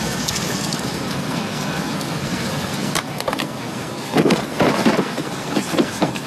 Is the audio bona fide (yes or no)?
no